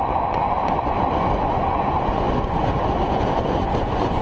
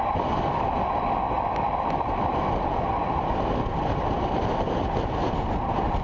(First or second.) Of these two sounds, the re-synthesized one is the first